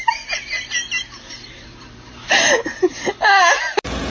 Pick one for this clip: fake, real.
real